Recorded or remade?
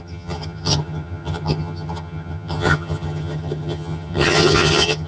remade